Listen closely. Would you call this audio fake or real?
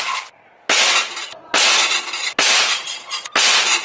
real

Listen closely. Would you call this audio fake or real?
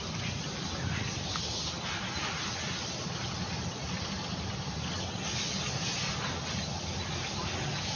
real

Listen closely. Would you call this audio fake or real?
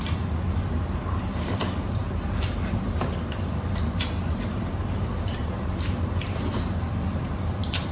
fake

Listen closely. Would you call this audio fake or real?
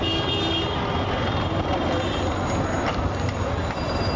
real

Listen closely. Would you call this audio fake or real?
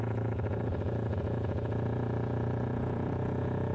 fake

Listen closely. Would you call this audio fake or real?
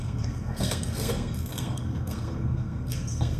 fake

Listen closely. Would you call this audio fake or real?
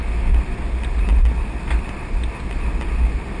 real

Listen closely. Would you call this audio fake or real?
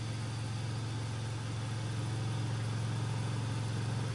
real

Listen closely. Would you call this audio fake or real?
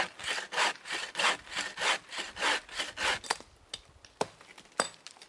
real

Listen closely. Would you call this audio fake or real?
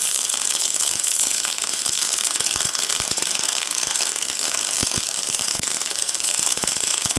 fake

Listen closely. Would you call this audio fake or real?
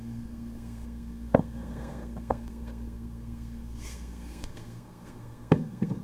fake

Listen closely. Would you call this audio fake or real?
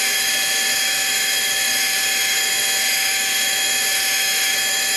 fake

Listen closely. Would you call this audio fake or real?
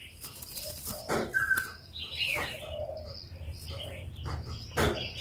real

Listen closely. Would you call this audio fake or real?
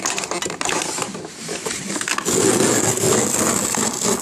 real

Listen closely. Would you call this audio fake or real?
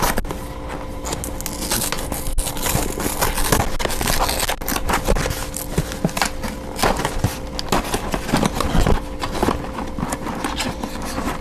real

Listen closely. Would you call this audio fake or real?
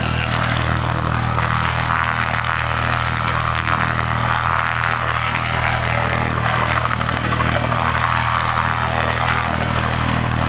fake